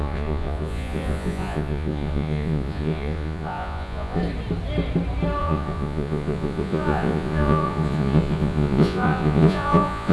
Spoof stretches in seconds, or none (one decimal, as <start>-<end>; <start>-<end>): 0.0-4.2; 5.4-10.1